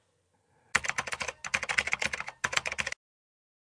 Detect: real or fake real